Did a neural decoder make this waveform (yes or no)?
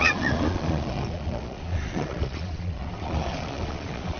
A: yes